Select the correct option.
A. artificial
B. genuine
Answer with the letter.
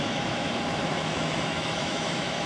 A